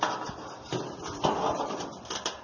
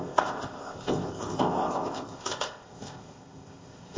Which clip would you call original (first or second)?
first